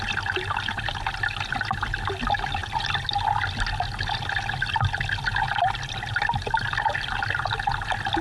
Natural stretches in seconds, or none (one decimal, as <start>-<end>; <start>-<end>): 0.0-8.2